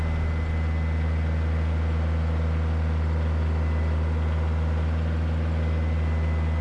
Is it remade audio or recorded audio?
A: recorded